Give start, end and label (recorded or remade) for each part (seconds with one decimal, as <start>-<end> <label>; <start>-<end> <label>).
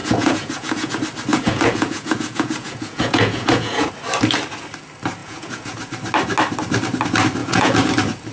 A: 0.0-0.9 remade; 0.9-1.3 recorded; 1.3-3.9 remade; 3.9-5.2 recorded; 5.2-5.8 remade; 5.8-7.4 recorded; 7.4-7.9 remade; 7.9-8.3 recorded